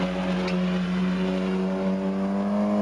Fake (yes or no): no